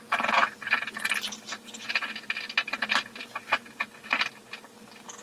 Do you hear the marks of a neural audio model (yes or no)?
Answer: no